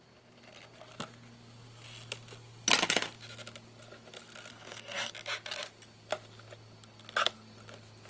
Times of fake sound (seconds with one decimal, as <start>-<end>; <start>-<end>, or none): 4.5-5.1